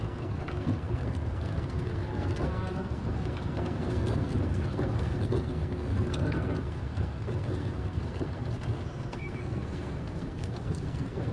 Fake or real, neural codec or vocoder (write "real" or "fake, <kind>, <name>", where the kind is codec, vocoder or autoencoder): fake, codec, SNAC